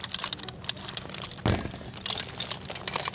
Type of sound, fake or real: real